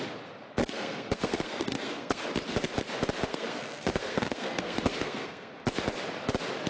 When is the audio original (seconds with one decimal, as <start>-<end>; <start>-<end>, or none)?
0.0-0.6; 2.2-3.3; 5.5-6.7